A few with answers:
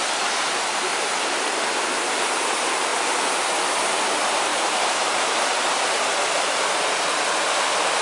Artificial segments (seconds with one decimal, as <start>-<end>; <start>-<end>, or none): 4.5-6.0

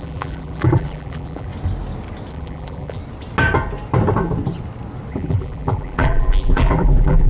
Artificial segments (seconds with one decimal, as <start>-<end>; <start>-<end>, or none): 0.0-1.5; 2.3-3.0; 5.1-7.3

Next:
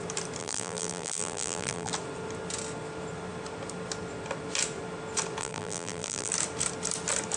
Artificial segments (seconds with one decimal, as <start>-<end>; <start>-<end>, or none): 0.4-1.9; 5.4-6.3

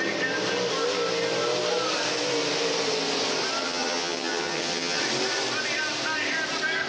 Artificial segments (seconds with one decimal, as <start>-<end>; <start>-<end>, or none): 3.6-5.0

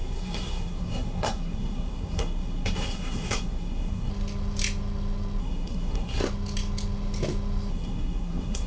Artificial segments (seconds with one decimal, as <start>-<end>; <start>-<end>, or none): 0.0-4.1; 5.4-6.2; 7.7-8.7

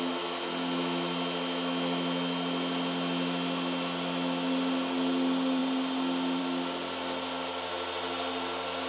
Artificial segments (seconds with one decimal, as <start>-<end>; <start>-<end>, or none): none